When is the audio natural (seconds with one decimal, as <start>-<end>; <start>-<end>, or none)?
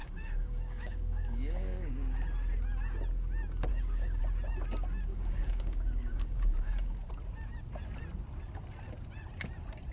1.9-3.7; 4.2-5.1; 7.0-9.9